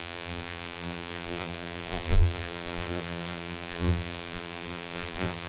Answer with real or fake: fake